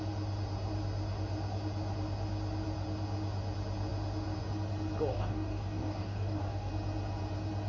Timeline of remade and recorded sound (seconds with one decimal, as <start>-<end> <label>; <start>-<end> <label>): 0.0-5.1 recorded; 5.1-6.7 remade; 6.7-7.7 recorded